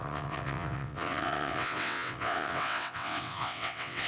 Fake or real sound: fake